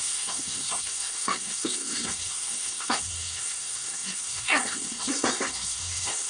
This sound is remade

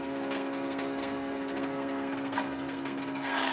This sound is remade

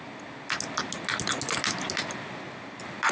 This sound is recorded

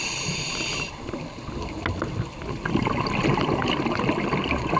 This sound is recorded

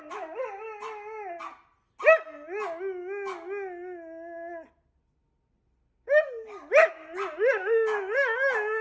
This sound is recorded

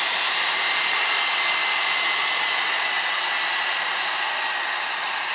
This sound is recorded